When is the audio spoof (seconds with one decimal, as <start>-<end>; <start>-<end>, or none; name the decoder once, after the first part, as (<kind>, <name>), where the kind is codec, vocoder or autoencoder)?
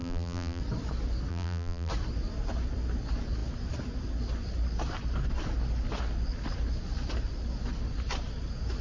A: 0.0-0.6 (vocoder, BigVGAN v2); 1.3-1.9